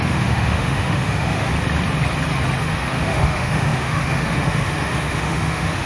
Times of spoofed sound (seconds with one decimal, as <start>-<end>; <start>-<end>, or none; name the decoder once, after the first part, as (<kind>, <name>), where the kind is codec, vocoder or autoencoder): 0.0-1.5 (autoencoder, DAC-VAE); 2.6-5.9